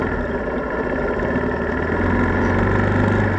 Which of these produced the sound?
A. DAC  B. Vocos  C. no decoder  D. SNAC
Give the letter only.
C